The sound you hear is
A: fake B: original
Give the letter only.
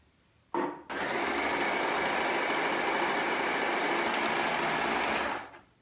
B